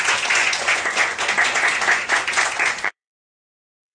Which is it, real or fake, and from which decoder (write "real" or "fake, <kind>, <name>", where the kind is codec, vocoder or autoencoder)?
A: fake, vocoder, Vocos